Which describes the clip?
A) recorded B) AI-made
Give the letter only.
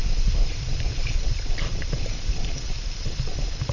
B